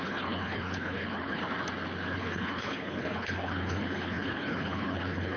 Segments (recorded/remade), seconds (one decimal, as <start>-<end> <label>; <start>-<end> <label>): 0.0-1.4 remade; 1.4-2.2 recorded; 2.2-5.4 remade